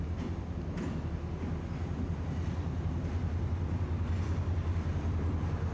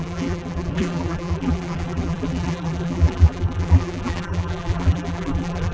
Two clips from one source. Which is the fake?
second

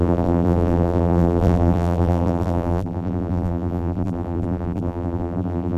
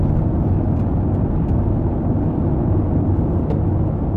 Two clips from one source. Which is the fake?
first